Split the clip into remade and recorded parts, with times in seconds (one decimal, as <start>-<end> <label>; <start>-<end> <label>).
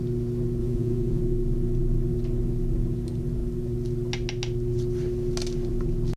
0.0-0.6 recorded; 0.6-1.2 remade; 1.2-6.2 recorded